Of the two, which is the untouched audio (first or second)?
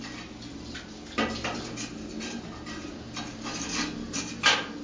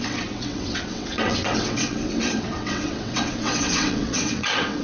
first